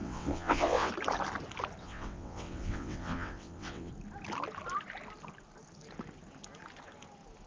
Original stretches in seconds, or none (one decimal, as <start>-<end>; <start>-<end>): 0.9-1.8; 3.9-7.5